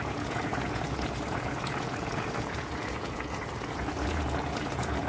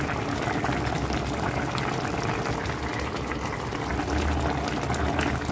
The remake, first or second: first